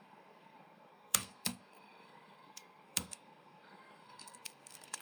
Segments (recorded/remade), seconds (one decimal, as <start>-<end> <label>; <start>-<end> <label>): 0.0-5.0 remade